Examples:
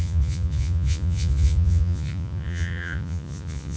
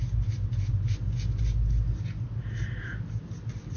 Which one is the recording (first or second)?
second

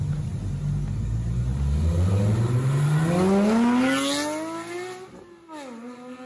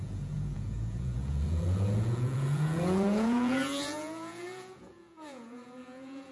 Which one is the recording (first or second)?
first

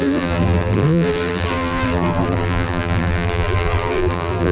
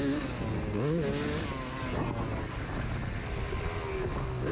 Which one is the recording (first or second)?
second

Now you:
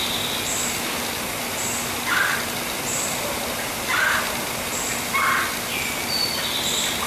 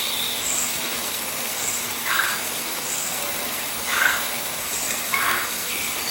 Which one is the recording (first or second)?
first